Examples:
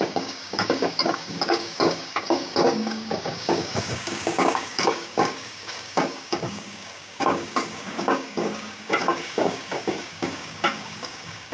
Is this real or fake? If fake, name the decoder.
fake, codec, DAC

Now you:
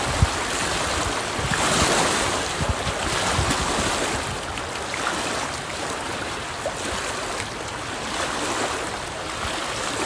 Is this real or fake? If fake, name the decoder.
real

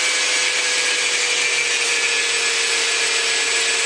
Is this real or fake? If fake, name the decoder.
real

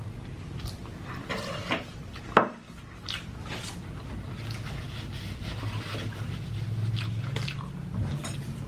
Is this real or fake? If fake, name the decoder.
real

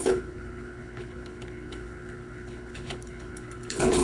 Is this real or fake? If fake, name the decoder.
fake, codec, HILCodec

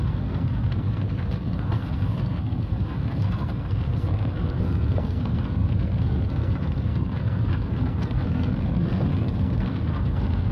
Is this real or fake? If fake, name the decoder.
fake, codec, SNAC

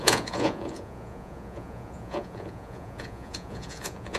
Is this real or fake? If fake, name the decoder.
fake, vocoder, Vocos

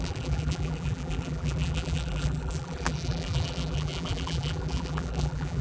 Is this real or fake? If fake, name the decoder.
fake, vocoder, BigVGAN v2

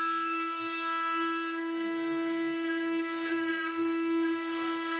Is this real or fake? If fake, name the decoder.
fake, codec, SNAC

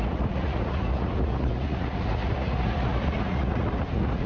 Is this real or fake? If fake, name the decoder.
fake, vocoder, Vocos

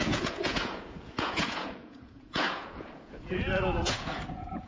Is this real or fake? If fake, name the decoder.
fake, vocoder, Vocos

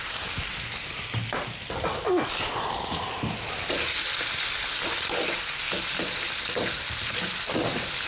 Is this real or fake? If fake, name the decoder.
real